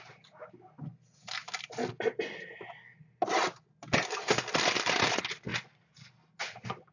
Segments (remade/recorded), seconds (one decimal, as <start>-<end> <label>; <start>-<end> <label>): 0.0-5.5 recorded; 5.5-6.9 remade